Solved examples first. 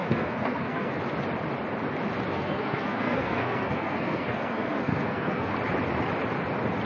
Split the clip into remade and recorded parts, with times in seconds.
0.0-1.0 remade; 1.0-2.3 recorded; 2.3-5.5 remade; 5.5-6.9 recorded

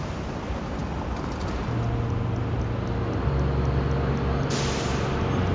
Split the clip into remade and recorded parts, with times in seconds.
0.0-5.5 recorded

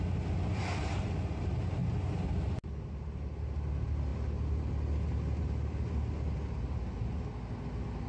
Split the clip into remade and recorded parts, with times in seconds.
0.0-8.1 recorded